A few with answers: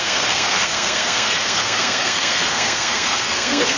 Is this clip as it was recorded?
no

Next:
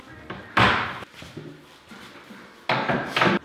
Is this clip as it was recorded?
yes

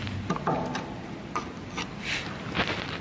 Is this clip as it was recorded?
yes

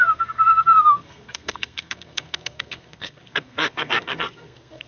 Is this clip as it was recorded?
no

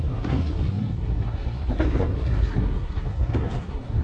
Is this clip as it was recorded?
no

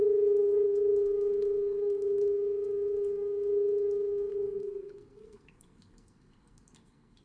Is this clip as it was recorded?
no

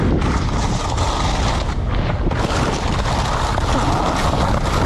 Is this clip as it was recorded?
yes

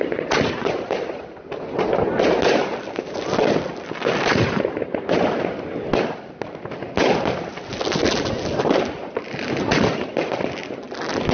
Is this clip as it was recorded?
yes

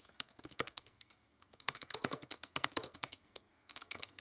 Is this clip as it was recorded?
no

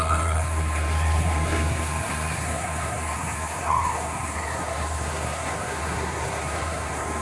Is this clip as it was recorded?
no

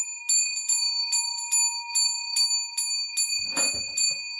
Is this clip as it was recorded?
yes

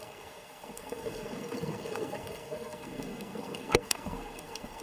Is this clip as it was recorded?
no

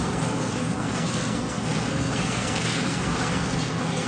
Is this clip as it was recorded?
no